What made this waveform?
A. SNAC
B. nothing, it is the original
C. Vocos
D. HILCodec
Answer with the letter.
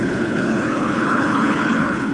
D